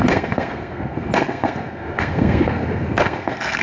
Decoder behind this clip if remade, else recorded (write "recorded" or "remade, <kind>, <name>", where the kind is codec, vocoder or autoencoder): remade, codec, SNAC